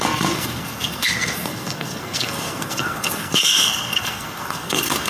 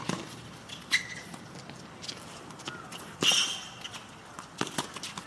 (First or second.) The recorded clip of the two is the second